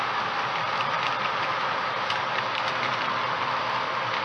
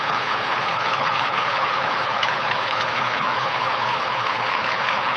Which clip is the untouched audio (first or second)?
first